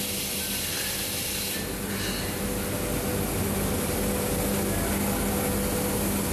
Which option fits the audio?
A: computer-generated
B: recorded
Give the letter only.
B